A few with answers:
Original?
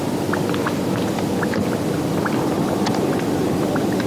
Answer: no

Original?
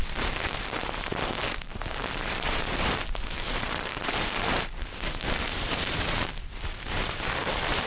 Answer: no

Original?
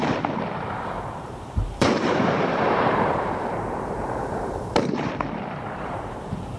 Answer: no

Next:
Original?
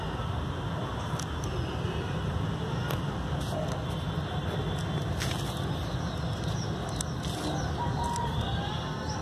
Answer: yes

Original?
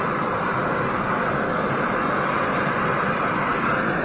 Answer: no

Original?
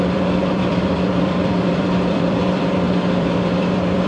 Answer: no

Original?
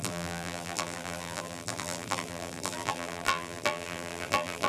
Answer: no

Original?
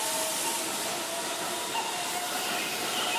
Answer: yes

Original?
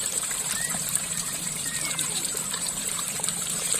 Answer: no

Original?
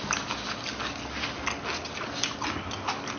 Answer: yes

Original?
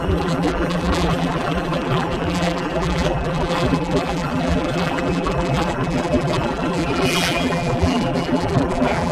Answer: no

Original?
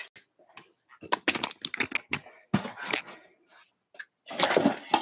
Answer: yes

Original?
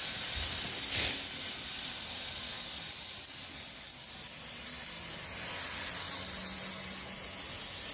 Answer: yes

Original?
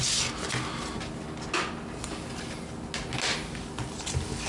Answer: yes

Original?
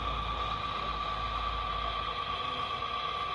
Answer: yes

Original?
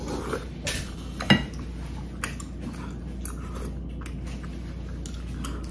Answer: yes